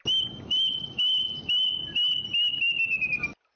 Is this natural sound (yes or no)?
yes